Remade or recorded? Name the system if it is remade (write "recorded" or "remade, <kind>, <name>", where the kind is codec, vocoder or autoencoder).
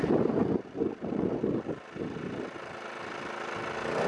recorded